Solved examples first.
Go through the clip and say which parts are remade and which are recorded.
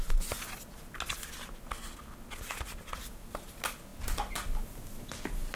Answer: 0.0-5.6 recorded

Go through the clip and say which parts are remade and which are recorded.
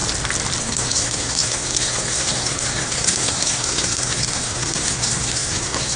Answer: 0.0-0.6 recorded; 0.6-6.0 remade